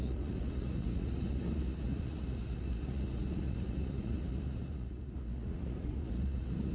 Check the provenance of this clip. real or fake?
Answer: fake